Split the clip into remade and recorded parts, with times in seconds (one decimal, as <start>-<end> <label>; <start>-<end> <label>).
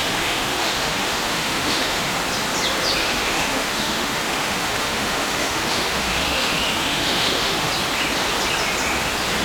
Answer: 0.0-2.1 remade; 2.1-3.0 recorded; 3.0-7.7 remade; 7.7-9.4 recorded